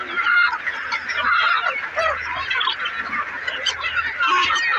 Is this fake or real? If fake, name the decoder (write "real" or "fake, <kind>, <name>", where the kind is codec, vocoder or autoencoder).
real